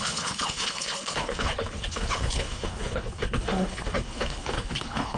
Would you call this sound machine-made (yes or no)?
yes